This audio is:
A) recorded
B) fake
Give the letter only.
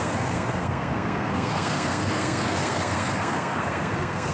B